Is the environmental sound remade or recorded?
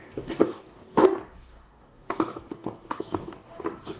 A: remade